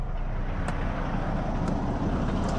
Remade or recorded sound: recorded